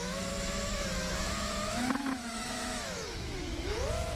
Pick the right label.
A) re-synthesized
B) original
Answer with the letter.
A